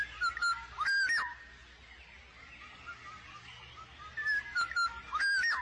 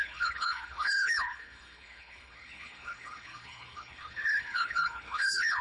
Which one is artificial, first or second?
second